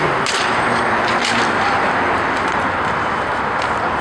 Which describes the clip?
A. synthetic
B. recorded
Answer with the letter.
B